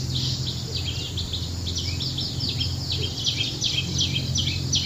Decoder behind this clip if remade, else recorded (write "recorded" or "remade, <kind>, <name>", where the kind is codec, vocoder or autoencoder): recorded